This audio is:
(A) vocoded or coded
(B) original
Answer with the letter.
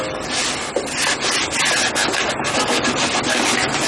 B